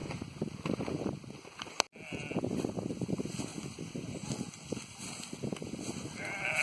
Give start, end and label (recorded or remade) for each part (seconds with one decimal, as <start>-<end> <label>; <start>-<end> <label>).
0.0-6.6 recorded